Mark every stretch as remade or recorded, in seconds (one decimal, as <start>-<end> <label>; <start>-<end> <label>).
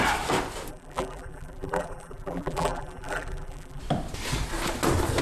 0.0-0.7 recorded; 0.7-3.8 remade; 3.8-5.2 recorded